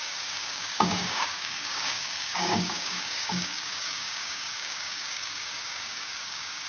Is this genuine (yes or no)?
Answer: no